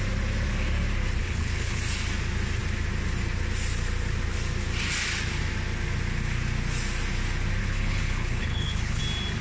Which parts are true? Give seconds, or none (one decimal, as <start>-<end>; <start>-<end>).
0.0-1.2; 1.8-7.6; 9.0-9.4